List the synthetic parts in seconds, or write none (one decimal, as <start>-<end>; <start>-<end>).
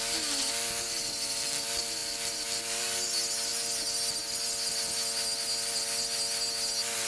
none